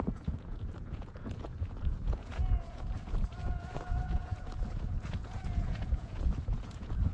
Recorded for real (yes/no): no